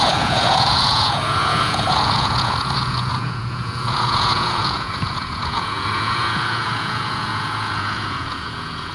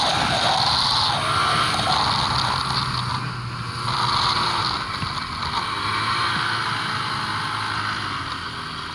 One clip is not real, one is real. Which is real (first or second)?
second